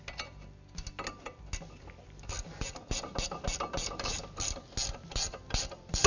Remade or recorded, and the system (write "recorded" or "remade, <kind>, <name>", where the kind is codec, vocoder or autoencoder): recorded